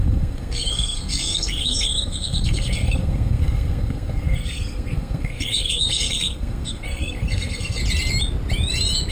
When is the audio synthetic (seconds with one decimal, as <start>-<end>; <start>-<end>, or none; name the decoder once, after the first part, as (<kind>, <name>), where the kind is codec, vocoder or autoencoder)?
0.0-7.8 (codec, SNAC)